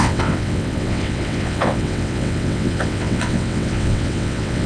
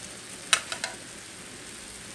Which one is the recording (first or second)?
second